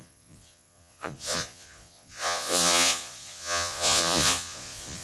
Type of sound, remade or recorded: remade